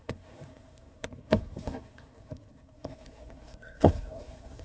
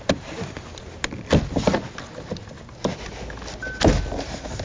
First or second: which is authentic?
second